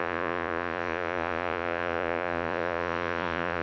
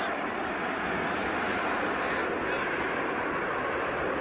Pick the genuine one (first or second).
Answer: second